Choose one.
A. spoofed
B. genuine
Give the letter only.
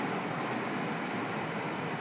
B